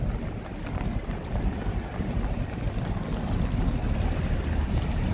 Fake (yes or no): yes